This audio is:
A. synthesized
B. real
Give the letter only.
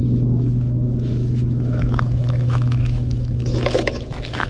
A